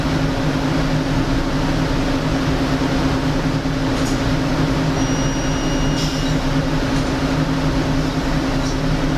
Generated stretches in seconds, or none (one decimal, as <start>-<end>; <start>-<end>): none